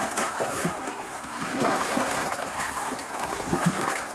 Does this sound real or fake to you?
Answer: fake